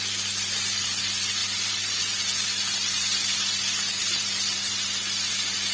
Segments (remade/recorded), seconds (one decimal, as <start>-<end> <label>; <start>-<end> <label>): 0.0-5.7 recorded